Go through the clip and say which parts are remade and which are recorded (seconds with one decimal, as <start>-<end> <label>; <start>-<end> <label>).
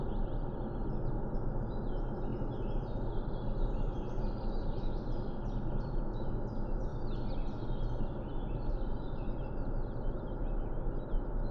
0.0-11.5 recorded